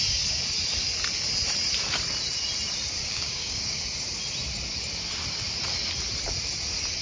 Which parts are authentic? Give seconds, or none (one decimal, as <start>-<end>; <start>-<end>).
0.0-3.0; 3.8-7.0